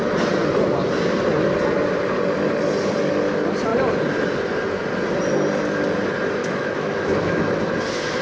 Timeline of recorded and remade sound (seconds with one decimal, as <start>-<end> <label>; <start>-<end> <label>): 0.0-6.4 recorded; 6.4-7.6 remade; 7.6-8.2 recorded